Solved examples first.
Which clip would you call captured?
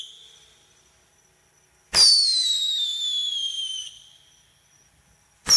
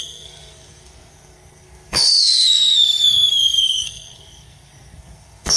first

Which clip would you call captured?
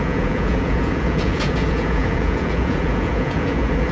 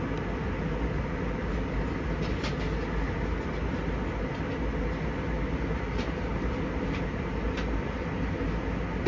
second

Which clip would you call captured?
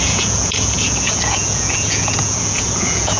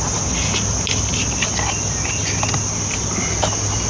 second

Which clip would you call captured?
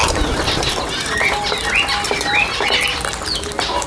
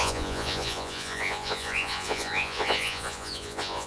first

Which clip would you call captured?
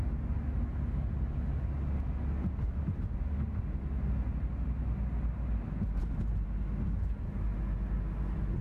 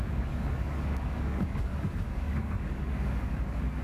first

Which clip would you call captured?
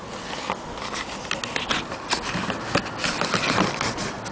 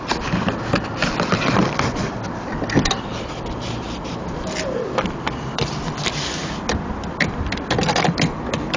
first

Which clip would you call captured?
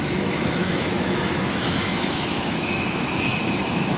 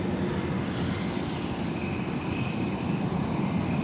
second